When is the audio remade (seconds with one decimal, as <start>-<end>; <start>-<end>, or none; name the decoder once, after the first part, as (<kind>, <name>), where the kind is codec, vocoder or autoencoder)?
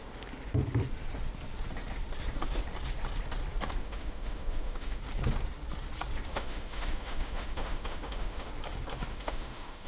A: 3.8-5.0 (autoencoder, DAC-VAE); 6.3-8.5; 9.1-9.9